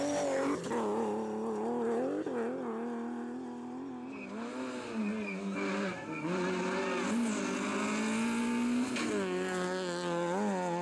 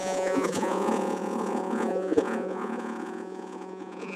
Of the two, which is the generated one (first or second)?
second